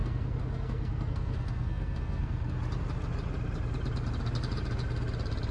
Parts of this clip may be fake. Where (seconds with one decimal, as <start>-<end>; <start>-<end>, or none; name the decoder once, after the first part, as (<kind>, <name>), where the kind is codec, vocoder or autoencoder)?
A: 0.0-2.6 (codec, SNAC)

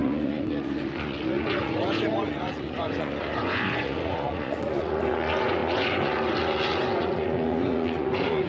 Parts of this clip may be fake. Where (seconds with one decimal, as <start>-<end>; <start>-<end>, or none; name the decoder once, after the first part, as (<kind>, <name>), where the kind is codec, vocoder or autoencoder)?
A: 0.0-8.5 (vocoder, Vocos)

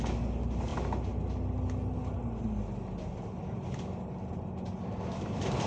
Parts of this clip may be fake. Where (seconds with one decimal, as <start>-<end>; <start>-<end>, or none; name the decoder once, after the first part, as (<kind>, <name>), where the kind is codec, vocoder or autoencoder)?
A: none

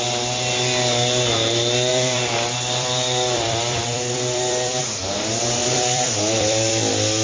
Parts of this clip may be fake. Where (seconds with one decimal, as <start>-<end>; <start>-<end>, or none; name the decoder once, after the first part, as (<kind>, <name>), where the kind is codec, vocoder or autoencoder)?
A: 1.9-4.8 (vocoder, BigVGAN v2); 5.6-6.7

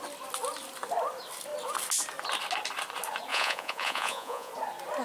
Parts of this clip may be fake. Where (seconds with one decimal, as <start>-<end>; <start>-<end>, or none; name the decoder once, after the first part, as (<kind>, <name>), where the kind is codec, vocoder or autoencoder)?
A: 3.3-4.5 (vocoder, Vocos)